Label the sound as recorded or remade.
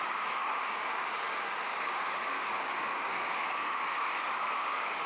remade